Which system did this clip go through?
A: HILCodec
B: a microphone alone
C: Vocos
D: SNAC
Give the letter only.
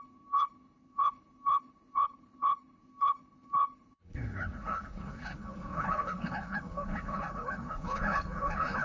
A